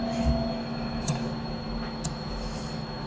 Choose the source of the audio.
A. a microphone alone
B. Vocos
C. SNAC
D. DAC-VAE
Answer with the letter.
D